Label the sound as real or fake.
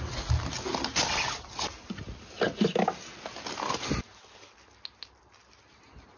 real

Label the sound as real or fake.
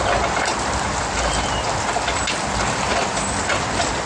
real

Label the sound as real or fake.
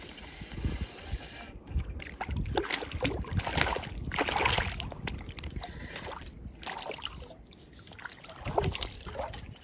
real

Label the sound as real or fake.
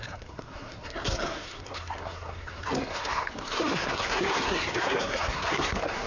fake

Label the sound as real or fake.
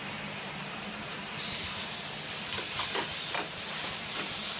fake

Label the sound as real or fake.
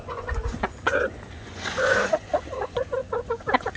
fake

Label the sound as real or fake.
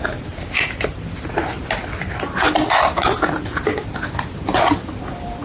real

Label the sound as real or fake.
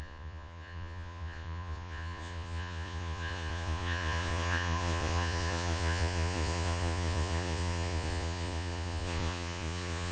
fake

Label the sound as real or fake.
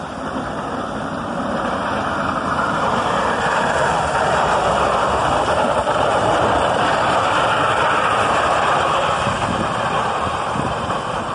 fake